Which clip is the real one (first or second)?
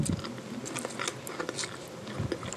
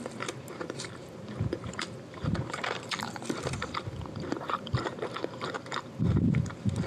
first